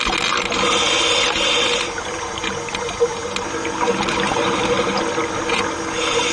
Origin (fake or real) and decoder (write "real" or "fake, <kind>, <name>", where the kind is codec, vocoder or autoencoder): real